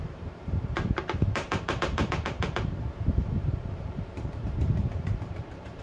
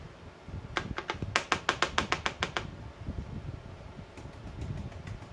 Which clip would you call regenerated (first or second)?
first